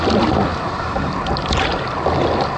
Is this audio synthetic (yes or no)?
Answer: no